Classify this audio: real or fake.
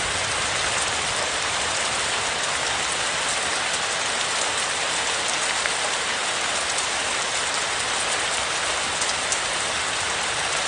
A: real